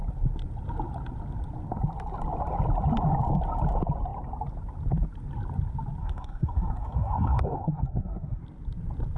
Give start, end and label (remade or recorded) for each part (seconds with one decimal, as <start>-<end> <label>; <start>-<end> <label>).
0.0-6.0 recorded; 6.0-8.4 remade; 8.4-9.2 recorded

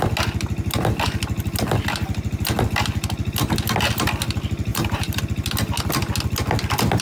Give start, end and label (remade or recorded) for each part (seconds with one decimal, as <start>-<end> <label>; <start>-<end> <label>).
0.0-4.7 recorded; 4.7-5.2 remade; 5.2-7.0 recorded